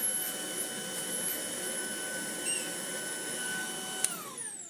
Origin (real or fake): real